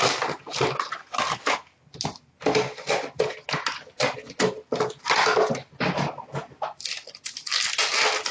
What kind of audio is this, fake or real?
real